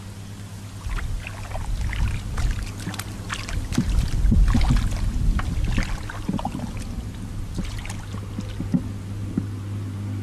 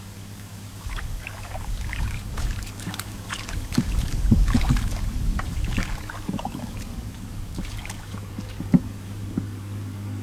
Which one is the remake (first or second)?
second